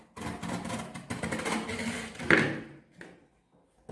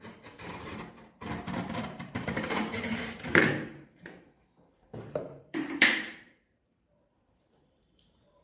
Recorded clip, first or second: first